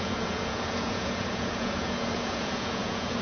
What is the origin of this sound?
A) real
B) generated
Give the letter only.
B